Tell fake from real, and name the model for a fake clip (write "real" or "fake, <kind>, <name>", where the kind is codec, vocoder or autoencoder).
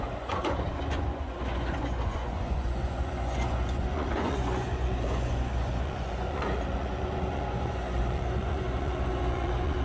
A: fake, vocoder, Vocos